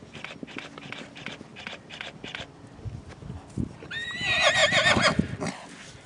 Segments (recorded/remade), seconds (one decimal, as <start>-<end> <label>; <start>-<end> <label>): 0.0-6.1 recorded